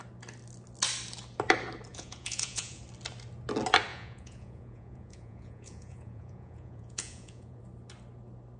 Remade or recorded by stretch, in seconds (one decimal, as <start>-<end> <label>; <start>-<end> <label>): 0.0-1.9 recorded; 1.9-2.8 remade; 2.8-3.9 recorded; 3.9-7.6 remade; 7.6-8.6 recorded